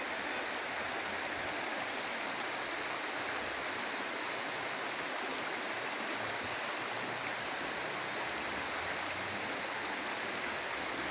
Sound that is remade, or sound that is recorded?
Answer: recorded